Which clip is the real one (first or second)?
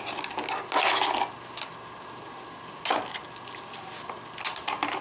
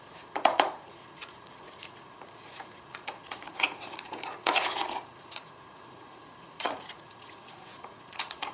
first